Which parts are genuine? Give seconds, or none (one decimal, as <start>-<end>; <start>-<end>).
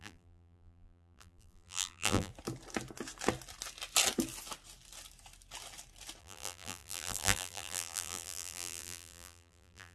2.3-6.2